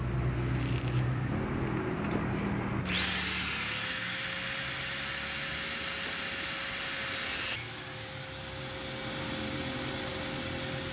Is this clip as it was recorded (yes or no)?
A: yes